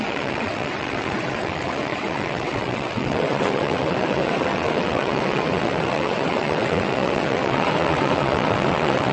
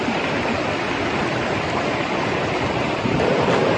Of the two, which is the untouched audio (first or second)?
second